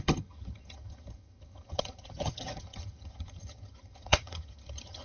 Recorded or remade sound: remade